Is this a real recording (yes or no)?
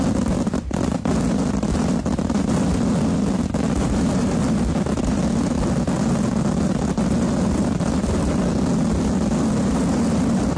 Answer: yes